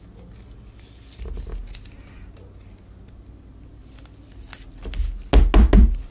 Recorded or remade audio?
recorded